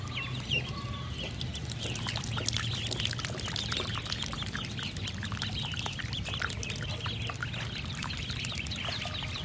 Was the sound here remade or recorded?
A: recorded